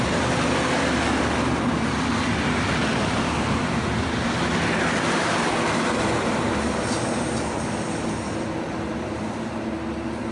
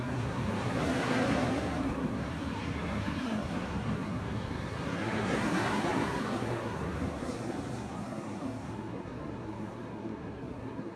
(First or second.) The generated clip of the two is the second